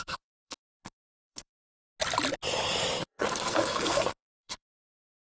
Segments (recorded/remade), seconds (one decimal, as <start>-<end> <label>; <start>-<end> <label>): 0.0-1.7 remade; 1.7-3.0 recorded; 3.0-5.3 remade